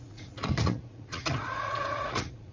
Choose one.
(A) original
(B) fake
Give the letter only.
B